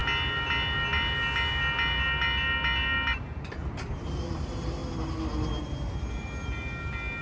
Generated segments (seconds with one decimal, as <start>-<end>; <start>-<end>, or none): none

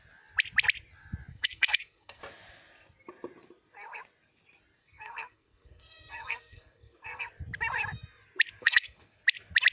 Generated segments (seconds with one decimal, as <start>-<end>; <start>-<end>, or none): 1.3-2.2; 4.8-7.2; 8.6-9.2